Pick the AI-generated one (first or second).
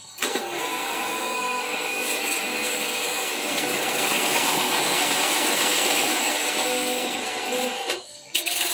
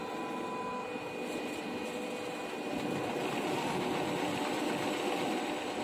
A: first